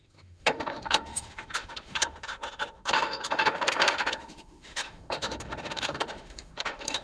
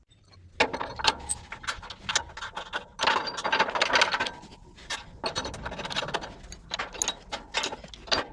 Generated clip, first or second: first